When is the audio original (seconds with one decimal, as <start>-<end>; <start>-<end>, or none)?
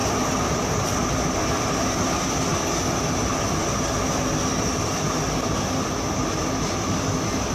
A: 1.1-7.5